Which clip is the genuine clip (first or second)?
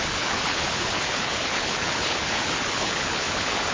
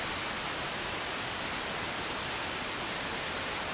second